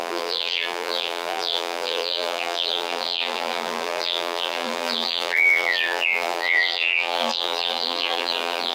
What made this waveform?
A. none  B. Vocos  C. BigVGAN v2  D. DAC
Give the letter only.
C